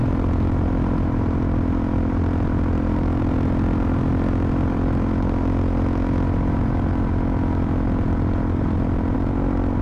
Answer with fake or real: real